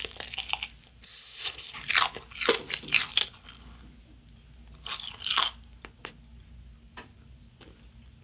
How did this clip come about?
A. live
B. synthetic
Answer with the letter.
A